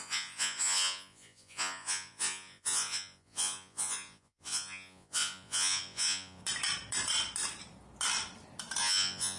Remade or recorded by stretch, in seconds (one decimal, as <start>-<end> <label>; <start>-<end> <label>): 0.0-6.4 remade; 6.4-8.8 recorded; 8.8-9.4 remade